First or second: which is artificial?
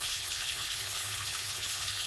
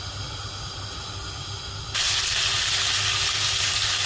first